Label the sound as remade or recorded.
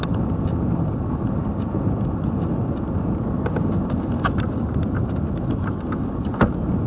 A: recorded